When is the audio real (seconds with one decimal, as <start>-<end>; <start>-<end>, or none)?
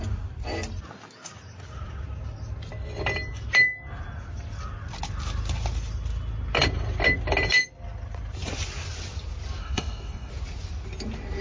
0.0-9.6; 10.3-11.4